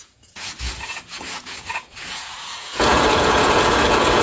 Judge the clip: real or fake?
fake